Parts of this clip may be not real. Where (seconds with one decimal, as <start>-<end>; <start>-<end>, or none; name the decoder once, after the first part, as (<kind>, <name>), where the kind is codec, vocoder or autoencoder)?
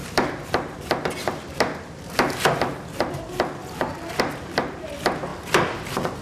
0.0-1.8 (vocoder, BigVGAN v2); 3.6-4.2; 5.3-6.2